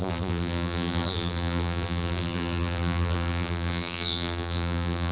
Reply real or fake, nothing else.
fake